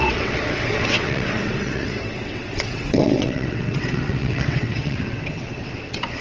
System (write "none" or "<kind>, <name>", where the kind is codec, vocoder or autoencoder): vocoder, WaveNeXt